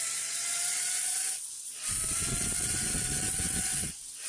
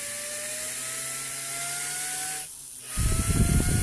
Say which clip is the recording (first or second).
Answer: second